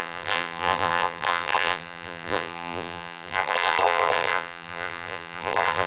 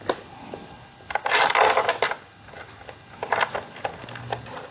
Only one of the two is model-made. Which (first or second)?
first